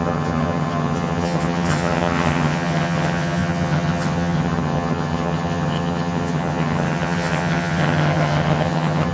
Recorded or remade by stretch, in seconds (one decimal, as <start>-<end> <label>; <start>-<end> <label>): 0.0-9.1 remade